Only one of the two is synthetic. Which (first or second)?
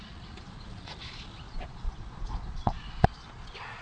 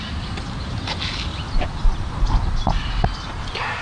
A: first